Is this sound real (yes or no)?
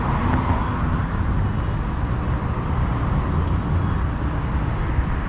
yes